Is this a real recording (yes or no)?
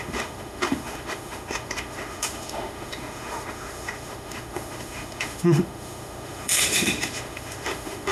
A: no